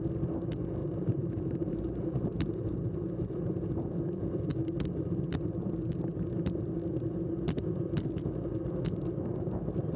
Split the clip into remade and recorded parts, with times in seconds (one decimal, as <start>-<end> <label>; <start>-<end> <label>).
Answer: 0.0-0.8 recorded; 0.8-3.7 remade; 3.7-10.0 recorded